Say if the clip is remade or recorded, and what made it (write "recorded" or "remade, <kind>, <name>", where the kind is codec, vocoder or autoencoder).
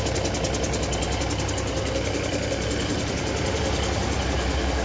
recorded